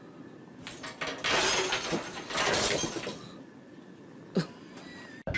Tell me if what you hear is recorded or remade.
recorded